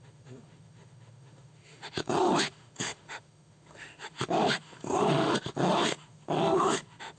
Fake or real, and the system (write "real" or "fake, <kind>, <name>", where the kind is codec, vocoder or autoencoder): fake, autoencoder, DAC-VAE